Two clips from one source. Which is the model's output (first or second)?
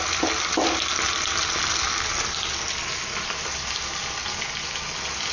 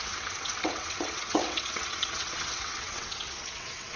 second